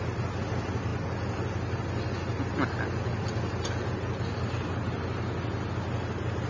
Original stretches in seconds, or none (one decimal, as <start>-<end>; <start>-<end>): 0.0-6.5